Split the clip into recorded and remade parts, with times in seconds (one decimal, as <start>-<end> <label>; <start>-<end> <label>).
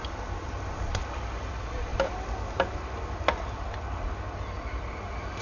0.0-5.4 recorded